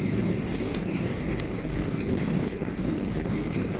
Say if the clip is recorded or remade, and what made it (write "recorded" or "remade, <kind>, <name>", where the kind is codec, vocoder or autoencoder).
remade, codec, DAC